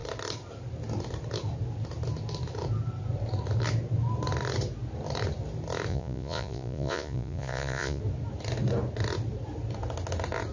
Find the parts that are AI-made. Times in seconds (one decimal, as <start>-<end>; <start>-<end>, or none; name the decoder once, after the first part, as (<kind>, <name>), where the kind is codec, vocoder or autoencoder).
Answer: 5.9-8.0 (vocoder, Vocos)